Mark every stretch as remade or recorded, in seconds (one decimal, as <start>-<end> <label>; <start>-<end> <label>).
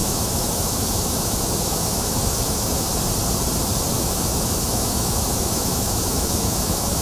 0.0-2.9 remade; 2.9-3.9 recorded; 3.9-7.0 remade